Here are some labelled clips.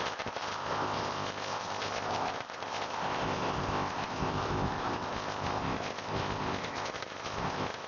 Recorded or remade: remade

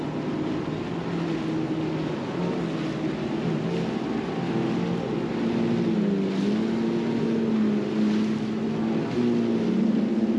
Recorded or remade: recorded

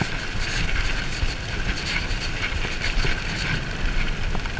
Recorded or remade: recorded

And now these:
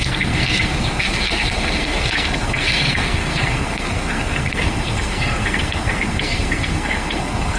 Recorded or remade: remade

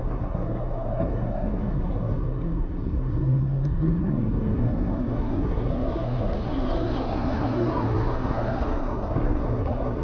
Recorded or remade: remade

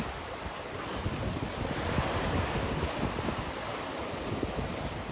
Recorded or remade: recorded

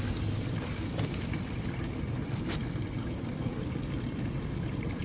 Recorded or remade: recorded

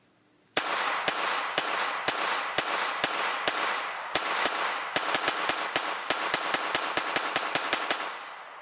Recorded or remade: recorded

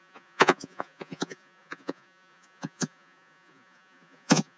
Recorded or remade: remade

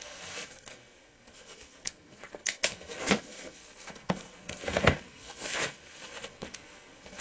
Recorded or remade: remade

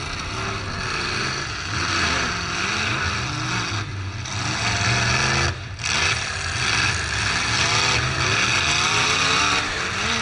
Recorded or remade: recorded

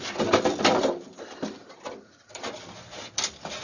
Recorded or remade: remade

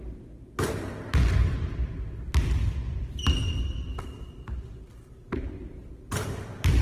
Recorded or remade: recorded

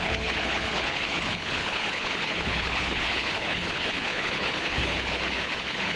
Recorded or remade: remade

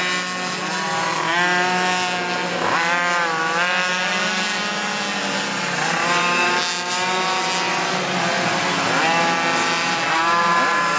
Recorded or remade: recorded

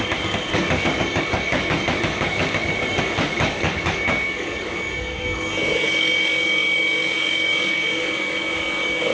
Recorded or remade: remade